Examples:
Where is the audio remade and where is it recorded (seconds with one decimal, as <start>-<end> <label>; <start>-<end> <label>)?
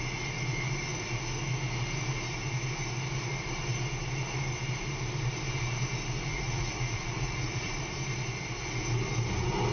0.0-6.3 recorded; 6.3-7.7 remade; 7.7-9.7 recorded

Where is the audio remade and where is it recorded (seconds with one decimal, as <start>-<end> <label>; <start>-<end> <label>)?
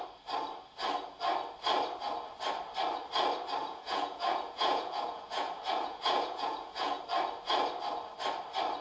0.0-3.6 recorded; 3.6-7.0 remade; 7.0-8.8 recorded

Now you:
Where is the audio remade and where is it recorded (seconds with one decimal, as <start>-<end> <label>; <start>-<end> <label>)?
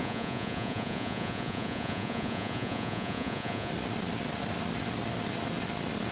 0.0-3.7 remade; 3.7-6.1 recorded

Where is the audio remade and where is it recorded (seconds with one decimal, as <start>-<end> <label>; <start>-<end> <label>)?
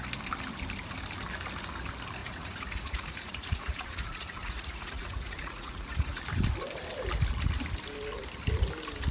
0.0-2.2 recorded; 2.2-6.2 remade; 6.2-9.1 recorded